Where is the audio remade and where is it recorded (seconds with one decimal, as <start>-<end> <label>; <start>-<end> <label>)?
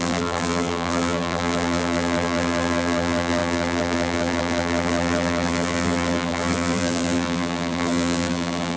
0.0-8.8 remade